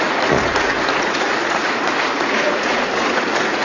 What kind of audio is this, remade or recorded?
remade